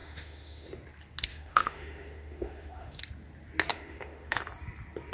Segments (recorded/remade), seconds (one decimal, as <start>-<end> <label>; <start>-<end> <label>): 0.0-0.7 remade; 0.7-1.3 recorded; 1.3-3.0 remade; 3.0-3.7 recorded; 3.7-4.4 remade; 4.4-5.1 recorded